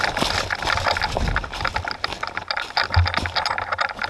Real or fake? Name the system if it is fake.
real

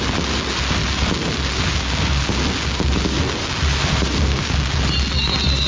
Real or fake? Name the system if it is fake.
real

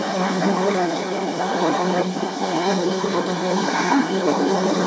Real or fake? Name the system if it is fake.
fake, codec, SNAC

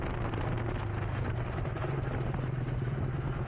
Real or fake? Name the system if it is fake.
real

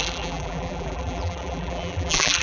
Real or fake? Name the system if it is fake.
fake, vocoder, BigVGAN v2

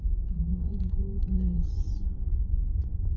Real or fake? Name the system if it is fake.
fake, vocoder, Vocos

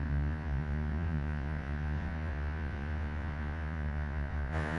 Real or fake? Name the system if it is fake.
fake, vocoder, Vocos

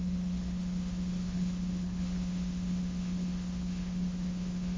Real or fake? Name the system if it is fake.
fake, codec, HILCodec